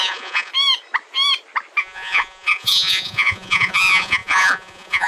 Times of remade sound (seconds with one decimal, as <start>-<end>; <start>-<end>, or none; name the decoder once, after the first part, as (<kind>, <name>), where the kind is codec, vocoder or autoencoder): 0.0-0.5 (vocoder, Vocos); 1.8-5.1

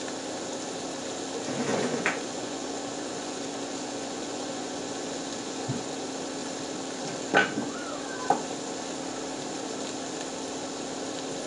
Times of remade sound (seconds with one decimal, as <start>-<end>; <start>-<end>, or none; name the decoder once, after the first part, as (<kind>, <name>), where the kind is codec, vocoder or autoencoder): 1.7-5.9 (vocoder, Vocos); 7.4-8.2

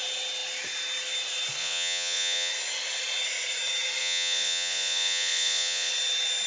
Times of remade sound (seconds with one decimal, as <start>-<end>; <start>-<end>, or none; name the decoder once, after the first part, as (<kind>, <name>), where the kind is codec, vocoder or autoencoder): 1.6-2.5 (vocoder, Vocos); 4.0-5.9

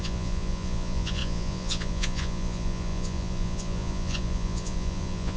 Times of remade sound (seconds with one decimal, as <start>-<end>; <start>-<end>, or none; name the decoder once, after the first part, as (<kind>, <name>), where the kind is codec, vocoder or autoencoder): 0.0-5.4 (vocoder, Vocos)

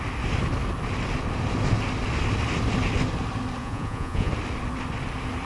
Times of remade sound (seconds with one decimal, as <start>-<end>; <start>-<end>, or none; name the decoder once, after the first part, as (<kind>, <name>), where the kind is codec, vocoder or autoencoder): 3.6-4.3 (vocoder, Vocos)

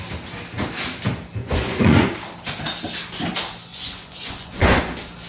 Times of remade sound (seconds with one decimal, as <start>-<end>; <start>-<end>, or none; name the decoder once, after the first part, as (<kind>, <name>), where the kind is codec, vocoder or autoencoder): 1.4-2.1 (vocoder, Vocos); 3.7-4.8

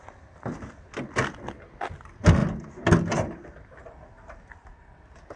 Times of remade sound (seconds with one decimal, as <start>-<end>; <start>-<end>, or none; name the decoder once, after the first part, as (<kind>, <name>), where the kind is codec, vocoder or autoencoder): none

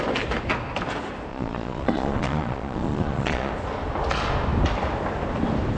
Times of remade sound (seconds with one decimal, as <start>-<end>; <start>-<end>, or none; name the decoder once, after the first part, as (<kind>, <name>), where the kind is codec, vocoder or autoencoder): 1.3-3.5 (vocoder, Vocos)